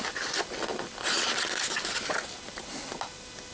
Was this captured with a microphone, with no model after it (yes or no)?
yes